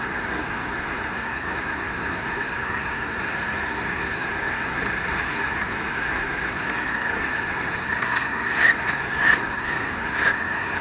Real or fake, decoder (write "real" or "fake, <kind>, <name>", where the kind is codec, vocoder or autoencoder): fake, codec, SNAC